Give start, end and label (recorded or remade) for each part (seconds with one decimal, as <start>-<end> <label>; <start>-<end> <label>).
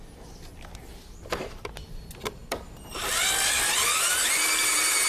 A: 0.0-5.1 recorded